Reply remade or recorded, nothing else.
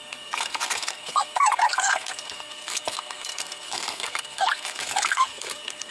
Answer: remade